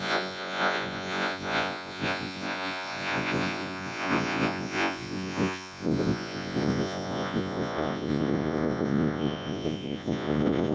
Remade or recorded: remade